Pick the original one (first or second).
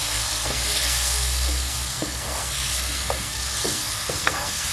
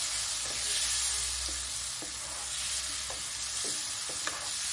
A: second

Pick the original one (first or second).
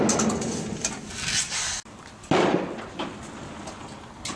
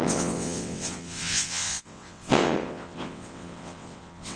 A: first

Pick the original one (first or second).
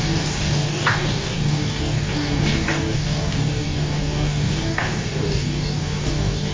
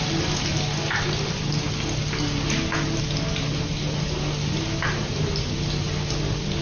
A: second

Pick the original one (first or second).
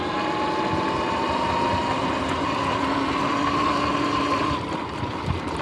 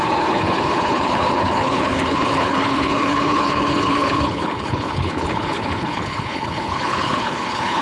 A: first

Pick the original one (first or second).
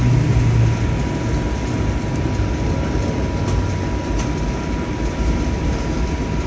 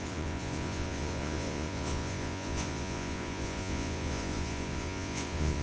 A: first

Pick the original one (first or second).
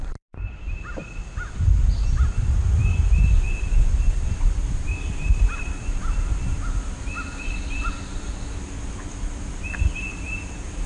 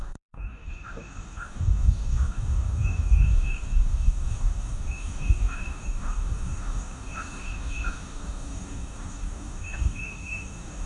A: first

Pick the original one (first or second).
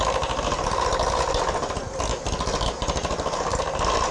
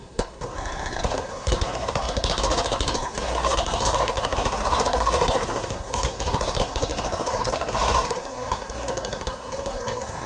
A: first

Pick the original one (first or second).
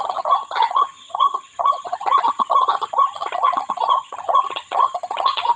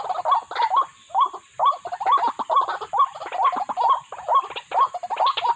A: second